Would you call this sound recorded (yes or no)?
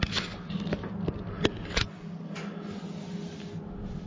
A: yes